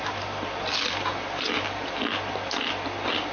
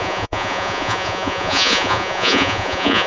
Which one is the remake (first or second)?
second